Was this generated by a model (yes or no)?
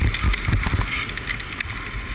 no